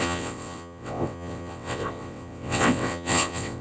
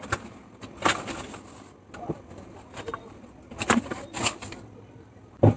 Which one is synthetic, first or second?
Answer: first